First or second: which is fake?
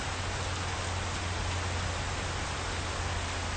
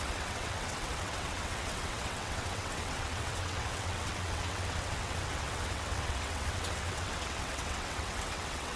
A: second